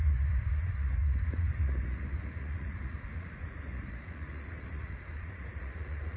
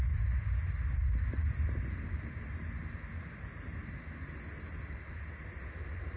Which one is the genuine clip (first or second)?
second